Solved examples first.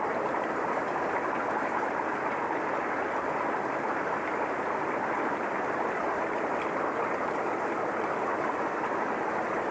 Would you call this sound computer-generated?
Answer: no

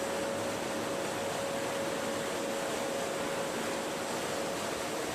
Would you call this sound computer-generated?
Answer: no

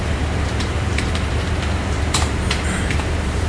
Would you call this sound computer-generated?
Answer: yes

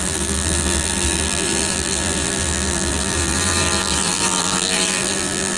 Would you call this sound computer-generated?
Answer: yes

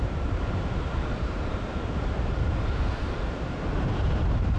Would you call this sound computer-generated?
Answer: yes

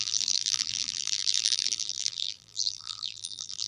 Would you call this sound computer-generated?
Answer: yes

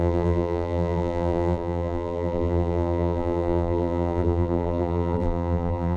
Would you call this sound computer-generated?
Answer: yes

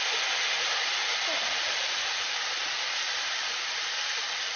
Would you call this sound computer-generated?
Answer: yes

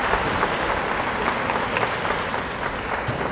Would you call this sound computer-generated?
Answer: yes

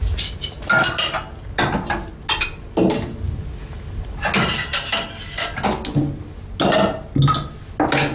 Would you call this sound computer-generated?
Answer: no